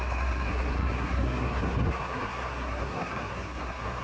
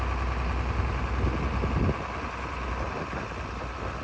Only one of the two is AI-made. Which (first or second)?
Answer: first